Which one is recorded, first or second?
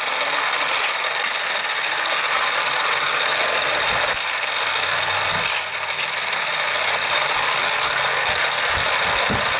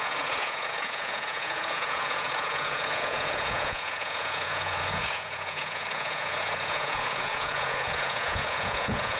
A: first